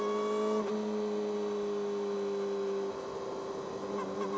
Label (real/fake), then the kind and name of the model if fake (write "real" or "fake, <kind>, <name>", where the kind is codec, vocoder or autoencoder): real